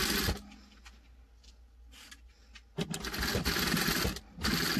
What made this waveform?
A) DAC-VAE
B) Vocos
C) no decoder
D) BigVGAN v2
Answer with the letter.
C